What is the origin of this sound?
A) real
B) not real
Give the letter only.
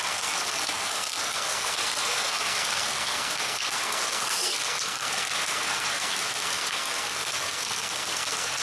B